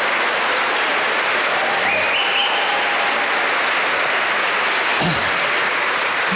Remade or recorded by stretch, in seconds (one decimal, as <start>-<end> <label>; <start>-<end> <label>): 0.0-6.4 recorded